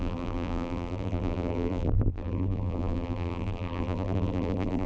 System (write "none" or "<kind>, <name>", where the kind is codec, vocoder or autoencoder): vocoder, BigVGAN v2